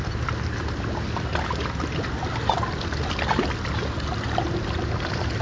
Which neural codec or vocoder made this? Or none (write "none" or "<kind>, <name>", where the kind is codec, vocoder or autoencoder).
none